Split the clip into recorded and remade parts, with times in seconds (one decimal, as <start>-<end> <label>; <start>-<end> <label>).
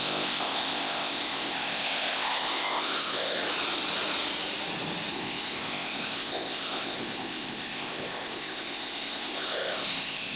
0.0-3.4 remade; 3.4-5.1 recorded; 5.1-10.4 remade